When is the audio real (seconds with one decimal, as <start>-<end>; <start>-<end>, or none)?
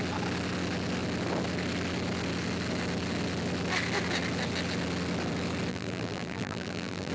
0.0-5.7